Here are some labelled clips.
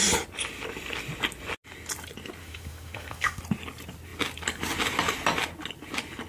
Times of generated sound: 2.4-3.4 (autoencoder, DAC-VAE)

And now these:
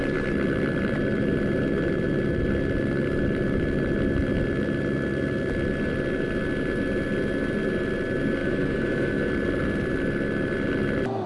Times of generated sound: 8.4-9.3 (autoencoder, DAC-VAE)

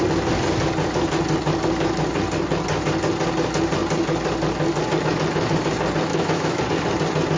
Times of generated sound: 6.1-6.6 (autoencoder, DAC-VAE)

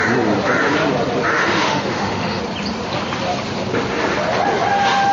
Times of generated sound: 1.3-2.4 (autoencoder, DAC-VAE)